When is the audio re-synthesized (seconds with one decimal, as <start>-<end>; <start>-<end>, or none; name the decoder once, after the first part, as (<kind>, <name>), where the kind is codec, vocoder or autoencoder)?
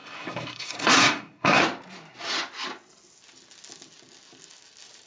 0.0-1.6 (codec, SNAC)